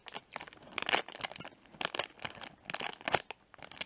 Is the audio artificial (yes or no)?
no